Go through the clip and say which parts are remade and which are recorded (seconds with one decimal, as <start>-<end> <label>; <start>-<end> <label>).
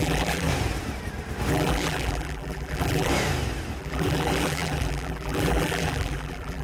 0.0-0.5 remade; 0.5-1.5 recorded; 1.5-3.1 remade; 3.1-3.8 recorded; 3.8-6.6 remade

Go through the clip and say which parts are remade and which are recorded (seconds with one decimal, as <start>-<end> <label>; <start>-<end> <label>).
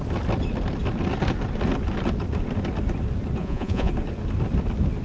0.0-3.4 recorded; 3.4-3.9 remade; 3.9-5.0 recorded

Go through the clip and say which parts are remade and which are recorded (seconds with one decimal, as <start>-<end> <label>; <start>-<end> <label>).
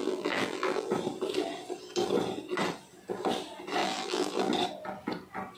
0.0-0.9 remade; 0.9-3.8 recorded; 3.8-4.5 remade; 4.5-5.6 recorded